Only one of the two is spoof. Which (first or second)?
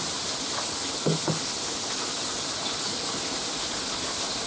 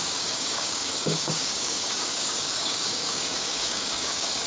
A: second